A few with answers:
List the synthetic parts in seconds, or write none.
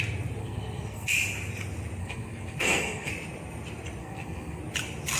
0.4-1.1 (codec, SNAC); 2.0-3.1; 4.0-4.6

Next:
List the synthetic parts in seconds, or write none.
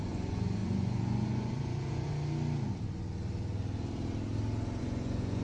0.0-2.1 (vocoder, Vocos); 4.8-5.4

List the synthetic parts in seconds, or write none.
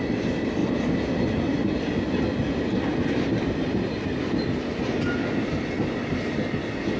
none